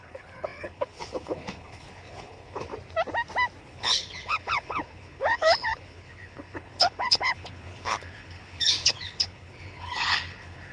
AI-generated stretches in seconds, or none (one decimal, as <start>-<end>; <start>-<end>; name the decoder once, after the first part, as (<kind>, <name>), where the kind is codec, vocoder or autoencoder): 0.0-2.7 (codec, HILCodec); 3.6-10.7